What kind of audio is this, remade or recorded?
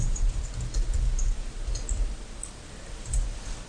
recorded